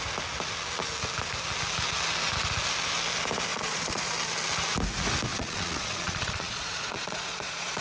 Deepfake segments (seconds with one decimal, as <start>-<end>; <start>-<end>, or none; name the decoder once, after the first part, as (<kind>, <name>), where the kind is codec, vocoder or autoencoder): 3.5-4.1 (vocoder, Vocos); 5.3-7.8